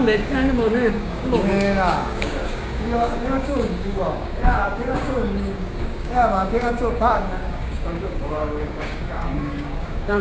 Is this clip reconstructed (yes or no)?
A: yes